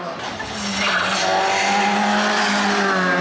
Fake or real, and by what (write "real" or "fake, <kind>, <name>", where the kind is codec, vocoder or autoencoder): real